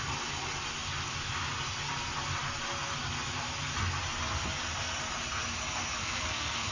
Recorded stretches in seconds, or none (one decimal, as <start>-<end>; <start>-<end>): 0.0-6.0